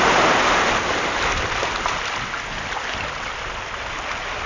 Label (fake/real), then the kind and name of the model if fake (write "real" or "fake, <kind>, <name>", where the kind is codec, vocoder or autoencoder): real